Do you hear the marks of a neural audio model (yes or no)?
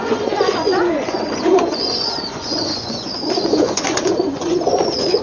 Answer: yes